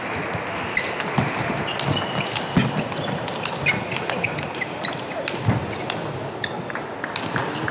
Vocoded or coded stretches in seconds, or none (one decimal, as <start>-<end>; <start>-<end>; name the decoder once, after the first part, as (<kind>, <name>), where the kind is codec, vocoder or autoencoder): none